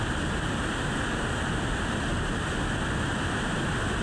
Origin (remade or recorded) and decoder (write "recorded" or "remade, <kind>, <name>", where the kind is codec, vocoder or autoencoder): recorded